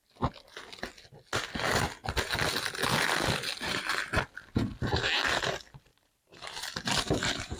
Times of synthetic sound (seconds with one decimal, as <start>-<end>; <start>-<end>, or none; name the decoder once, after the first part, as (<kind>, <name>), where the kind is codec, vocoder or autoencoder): 5.9-7.6 (vocoder, BigVGAN v2)